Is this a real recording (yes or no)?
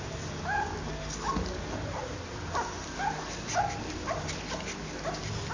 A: yes